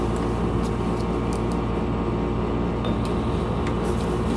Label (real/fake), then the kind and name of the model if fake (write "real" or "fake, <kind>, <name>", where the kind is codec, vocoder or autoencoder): real